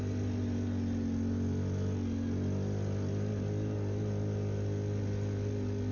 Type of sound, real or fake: real